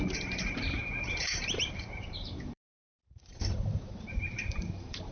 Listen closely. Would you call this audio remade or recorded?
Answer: remade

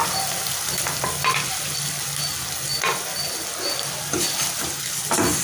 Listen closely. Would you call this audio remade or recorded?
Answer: recorded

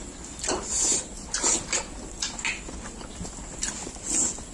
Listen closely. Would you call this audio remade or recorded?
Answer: recorded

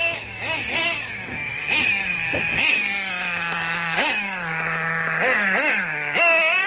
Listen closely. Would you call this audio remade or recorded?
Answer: remade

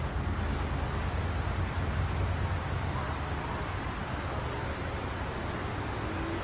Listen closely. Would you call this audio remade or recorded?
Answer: recorded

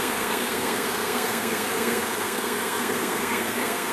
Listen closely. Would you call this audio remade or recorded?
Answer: remade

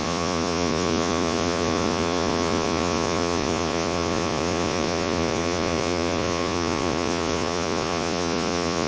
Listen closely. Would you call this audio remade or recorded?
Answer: remade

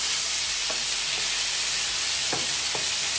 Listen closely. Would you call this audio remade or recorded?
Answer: recorded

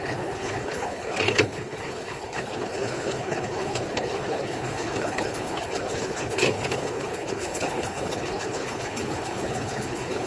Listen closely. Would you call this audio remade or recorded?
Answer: remade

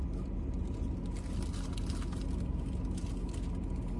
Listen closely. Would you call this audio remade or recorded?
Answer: recorded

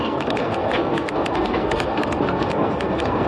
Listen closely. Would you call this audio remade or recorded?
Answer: remade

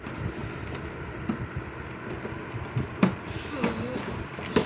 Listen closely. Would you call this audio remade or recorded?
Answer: recorded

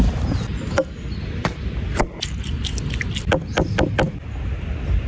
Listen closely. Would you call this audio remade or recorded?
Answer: recorded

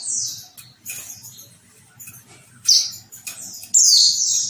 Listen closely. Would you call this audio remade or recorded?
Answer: recorded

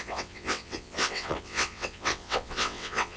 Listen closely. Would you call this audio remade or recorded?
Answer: remade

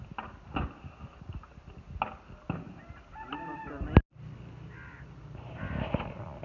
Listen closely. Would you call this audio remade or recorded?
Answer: recorded